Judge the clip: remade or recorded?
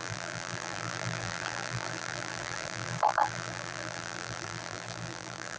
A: remade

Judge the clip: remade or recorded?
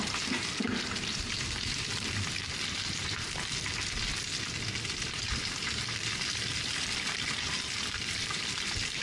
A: remade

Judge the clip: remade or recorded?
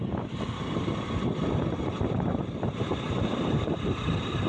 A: remade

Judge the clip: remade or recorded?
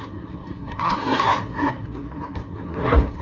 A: remade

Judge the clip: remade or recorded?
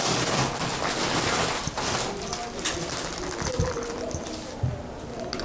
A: recorded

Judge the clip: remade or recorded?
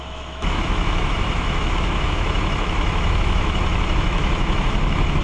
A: remade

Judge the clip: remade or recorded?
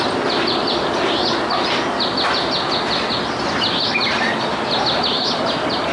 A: recorded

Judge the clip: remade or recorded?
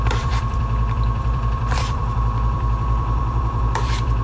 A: remade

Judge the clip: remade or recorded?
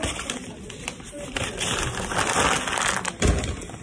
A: recorded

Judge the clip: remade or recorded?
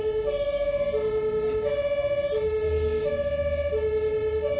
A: recorded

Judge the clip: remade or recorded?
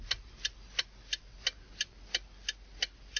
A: recorded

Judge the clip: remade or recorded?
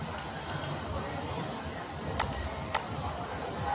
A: recorded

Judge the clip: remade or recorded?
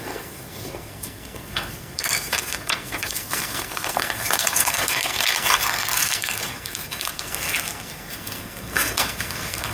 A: remade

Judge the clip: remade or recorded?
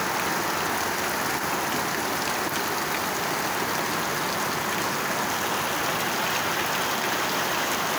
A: recorded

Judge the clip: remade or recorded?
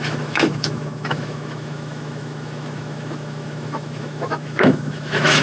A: remade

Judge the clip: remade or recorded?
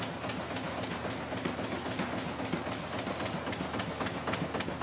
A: recorded